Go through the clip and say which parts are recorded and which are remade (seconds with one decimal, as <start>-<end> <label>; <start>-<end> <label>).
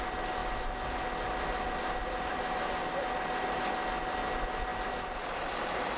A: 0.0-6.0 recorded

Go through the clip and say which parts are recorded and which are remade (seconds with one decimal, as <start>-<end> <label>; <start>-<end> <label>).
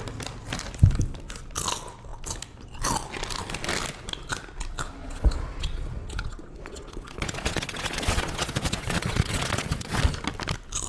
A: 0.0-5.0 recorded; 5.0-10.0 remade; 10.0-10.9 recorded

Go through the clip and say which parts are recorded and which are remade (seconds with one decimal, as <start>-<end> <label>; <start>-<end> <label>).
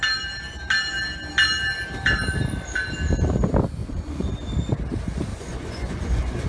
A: 0.0-3.8 recorded; 3.8-4.3 remade; 4.3-5.3 recorded; 5.3-6.5 remade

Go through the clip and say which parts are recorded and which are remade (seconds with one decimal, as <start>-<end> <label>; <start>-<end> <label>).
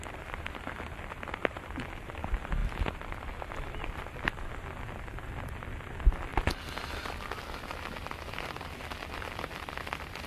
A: 0.0-2.6 remade; 2.6-3.9 recorded; 3.9-6.3 remade; 6.3-7.4 recorded; 7.4-10.3 remade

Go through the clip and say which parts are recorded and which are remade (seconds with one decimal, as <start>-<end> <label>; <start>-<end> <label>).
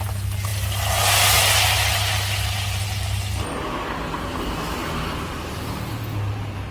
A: 0.0-4.8 recorded; 4.8-5.5 remade; 5.5-6.7 recorded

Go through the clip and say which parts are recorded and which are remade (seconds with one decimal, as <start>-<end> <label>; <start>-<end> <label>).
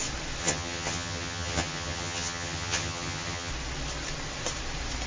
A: 0.0-0.4 recorded; 0.4-3.5 remade; 3.5-5.1 recorded